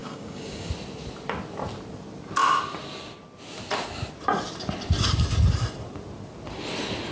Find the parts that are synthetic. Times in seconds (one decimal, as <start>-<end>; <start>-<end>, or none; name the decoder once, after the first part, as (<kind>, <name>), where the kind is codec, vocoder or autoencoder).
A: 0.0-0.7 (codec, DAC)